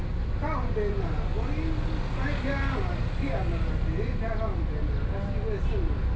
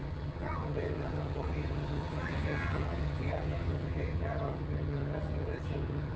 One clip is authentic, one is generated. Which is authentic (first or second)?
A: first